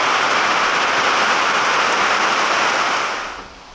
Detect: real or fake real